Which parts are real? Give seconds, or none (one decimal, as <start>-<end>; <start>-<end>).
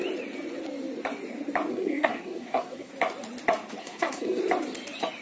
0.0-1.7; 2.9-3.8; 4.4-5.2